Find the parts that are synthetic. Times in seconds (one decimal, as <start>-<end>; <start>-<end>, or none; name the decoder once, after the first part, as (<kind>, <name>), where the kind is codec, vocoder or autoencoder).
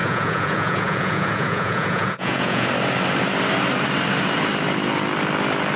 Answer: 0.0-2.7 (vocoder, Vocos)